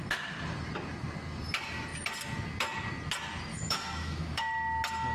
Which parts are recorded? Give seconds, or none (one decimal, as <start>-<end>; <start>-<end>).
0.0-3.5; 4.4-5.1